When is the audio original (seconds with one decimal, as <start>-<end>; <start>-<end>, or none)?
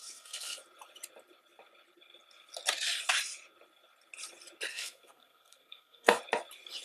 0.6-4.7; 6.2-6.8